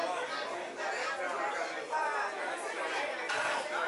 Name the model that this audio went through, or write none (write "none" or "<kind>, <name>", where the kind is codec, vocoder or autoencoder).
none